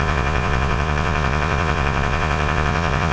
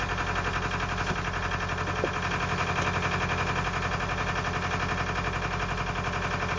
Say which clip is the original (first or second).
second